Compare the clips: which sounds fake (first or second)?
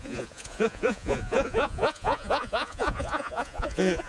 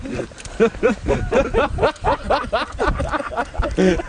first